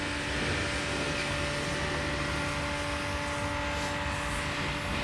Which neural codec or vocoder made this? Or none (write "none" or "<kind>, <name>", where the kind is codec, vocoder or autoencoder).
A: none